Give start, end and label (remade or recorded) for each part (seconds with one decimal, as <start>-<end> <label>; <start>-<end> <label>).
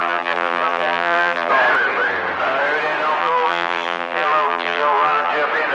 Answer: 0.0-1.5 remade; 1.5-3.2 recorded; 3.2-5.3 remade; 5.3-5.7 recorded